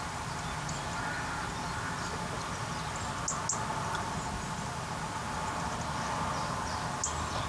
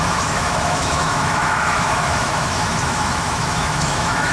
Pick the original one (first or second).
first